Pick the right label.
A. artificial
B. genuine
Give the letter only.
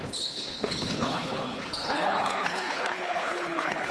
A